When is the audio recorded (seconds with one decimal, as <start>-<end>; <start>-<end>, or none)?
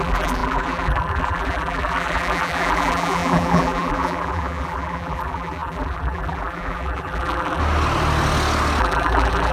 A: 7.6-8.8